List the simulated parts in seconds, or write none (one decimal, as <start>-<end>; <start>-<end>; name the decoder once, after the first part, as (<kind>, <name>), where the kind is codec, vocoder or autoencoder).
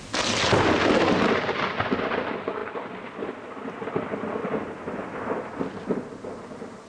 none